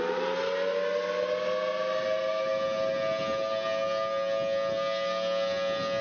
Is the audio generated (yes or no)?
no